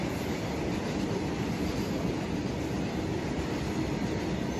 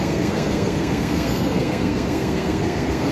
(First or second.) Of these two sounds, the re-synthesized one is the second